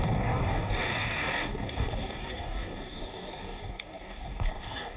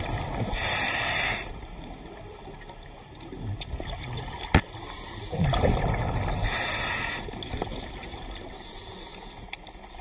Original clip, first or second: second